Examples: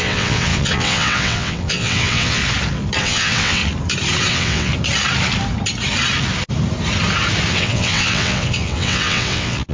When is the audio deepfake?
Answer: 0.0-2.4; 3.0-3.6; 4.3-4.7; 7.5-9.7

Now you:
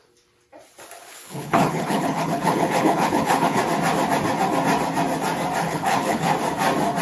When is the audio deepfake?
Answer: 1.1-3.6; 5.6-6.3

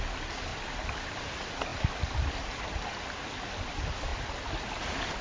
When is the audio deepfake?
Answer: 0.5-1.1

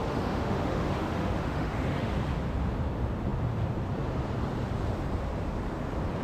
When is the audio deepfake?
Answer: 0.0-2.1

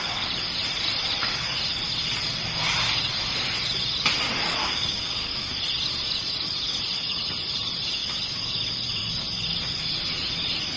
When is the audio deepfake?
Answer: 4.6-5.5

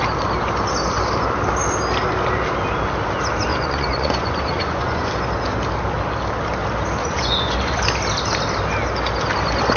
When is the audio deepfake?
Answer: 3.5-5.1; 7.0-7.8

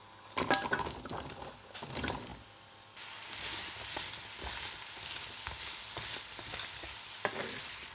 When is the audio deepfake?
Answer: none

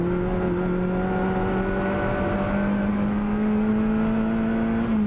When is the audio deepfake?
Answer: 2.9-3.7